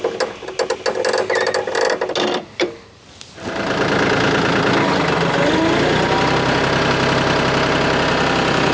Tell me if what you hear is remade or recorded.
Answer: recorded